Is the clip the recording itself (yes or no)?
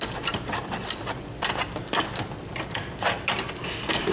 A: yes